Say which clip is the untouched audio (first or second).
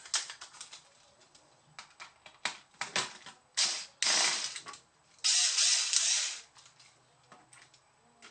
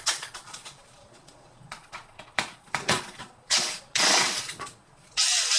first